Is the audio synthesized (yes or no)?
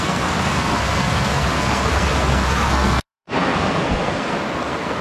yes